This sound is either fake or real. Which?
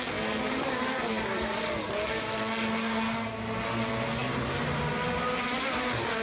real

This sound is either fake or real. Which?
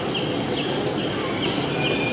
real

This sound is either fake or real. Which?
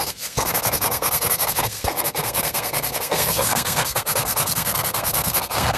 fake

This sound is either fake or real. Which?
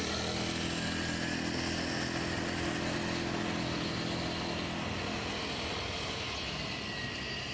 real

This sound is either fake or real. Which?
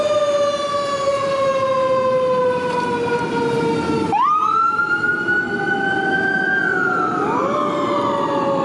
real